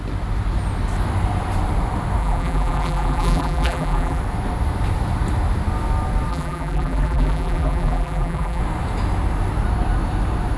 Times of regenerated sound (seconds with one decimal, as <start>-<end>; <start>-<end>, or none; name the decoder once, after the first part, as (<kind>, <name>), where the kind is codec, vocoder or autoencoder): 2.2-4.2 (vocoder, BigVGAN v2); 6.3-8.6